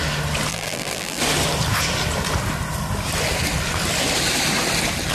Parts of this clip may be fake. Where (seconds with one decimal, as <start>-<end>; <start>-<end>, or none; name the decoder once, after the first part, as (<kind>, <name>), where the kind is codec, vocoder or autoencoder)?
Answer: 0.5-1.2 (vocoder, BigVGAN v2)